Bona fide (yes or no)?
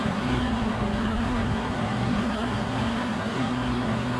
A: no